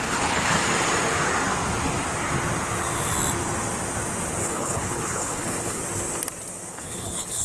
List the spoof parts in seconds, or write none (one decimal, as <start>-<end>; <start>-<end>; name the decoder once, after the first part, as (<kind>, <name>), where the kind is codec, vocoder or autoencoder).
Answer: 0.0-0.6 (codec, HILCodec); 4.4-5.8; 6.7-7.4